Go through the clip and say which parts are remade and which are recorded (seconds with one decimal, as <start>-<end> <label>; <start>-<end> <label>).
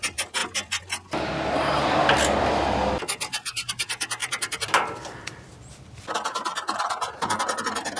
0.0-6.5 recorded; 6.5-7.6 remade; 7.6-8.0 recorded